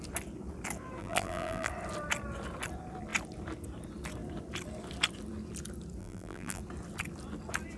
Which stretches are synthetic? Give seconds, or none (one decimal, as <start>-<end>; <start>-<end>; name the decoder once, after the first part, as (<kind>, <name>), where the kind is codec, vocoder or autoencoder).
1.0-1.7 (vocoder, BigVGAN v2); 6.0-6.6